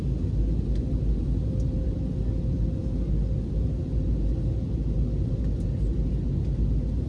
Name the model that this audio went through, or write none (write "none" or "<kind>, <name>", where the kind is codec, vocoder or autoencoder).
none